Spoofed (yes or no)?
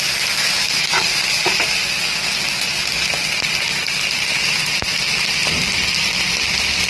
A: no